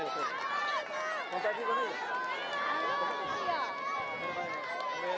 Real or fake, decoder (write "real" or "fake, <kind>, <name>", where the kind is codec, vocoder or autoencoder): real